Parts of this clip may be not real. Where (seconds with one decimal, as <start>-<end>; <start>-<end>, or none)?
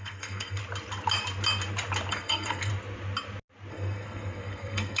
0.0-0.6; 2.1-2.7; 3.7-5.0